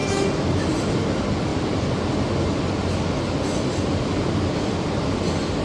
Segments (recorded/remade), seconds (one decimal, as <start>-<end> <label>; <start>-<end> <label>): 0.0-5.6 recorded